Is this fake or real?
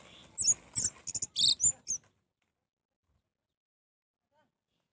real